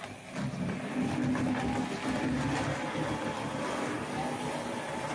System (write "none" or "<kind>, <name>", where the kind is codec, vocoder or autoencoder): none